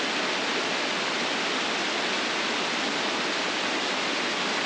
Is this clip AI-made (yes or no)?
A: no